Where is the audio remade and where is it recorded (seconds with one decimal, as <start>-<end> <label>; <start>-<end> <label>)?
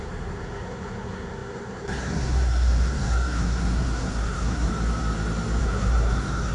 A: 0.0-4.7 remade; 4.7-5.6 recorded; 5.6-6.5 remade